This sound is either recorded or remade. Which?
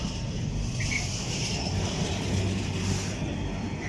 recorded